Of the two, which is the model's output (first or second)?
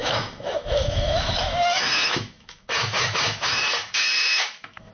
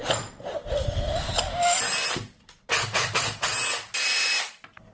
first